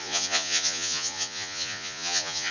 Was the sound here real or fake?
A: fake